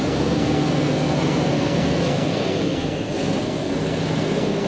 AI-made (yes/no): yes